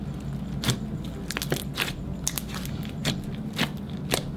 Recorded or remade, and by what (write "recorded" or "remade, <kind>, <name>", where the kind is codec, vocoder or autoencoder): recorded